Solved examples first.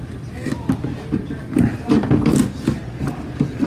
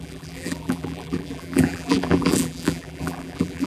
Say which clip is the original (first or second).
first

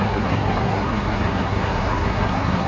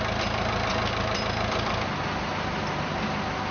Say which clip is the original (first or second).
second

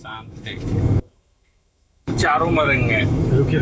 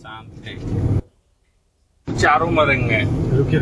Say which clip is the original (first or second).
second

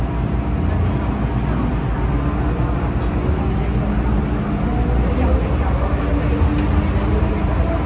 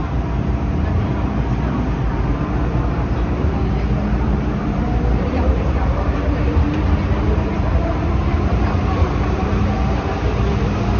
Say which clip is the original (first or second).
first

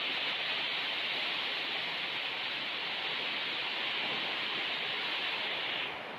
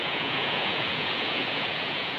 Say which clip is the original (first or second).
first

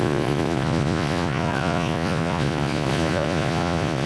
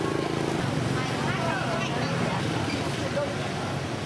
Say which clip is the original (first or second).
second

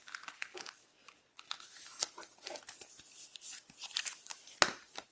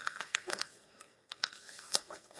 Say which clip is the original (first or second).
first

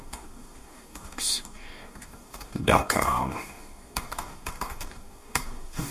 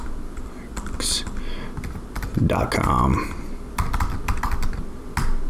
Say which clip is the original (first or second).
second